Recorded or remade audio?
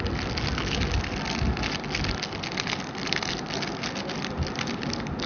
recorded